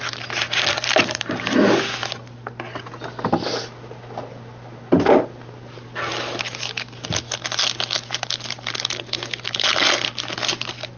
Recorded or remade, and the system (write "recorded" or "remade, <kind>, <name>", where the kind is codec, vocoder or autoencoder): recorded